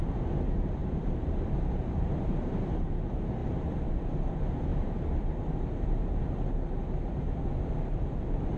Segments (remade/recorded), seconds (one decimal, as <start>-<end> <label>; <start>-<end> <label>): 0.0-0.8 recorded; 0.8-2.9 remade; 2.9-3.4 recorded; 3.4-4.3 remade; 4.3-4.7 recorded; 4.7-6.2 remade; 6.2-8.6 recorded